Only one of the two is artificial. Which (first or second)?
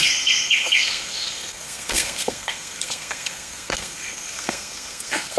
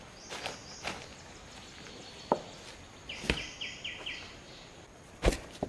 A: first